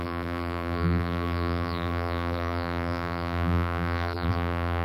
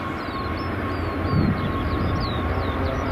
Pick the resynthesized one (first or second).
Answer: first